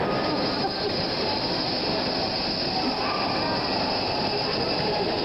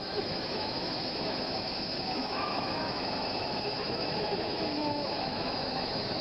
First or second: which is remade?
second